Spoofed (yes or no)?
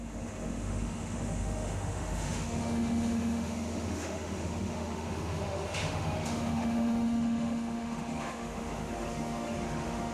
yes